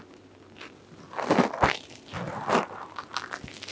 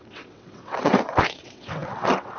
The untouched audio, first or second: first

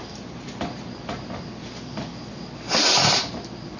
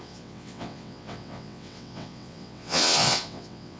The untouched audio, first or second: first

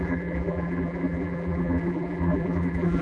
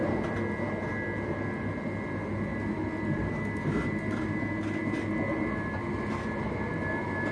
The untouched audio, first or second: second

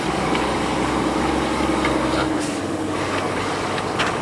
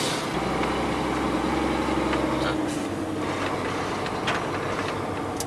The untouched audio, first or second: second